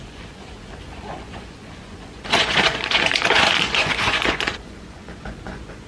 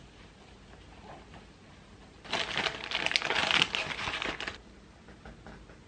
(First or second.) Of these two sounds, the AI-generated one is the first